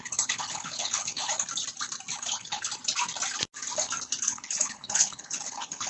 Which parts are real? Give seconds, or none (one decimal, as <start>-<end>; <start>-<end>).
1.3-2.2; 2.7-4.1